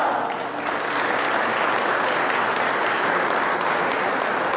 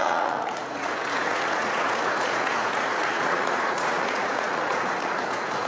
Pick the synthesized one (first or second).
second